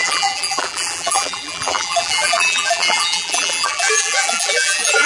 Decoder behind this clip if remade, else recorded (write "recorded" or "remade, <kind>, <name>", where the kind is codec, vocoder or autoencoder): remade, vocoder, BigVGAN v2